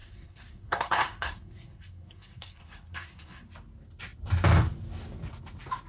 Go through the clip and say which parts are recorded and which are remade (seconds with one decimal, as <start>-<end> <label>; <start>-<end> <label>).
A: 0.0-3.5 remade; 3.5-5.9 recorded